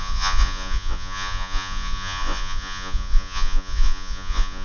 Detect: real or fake fake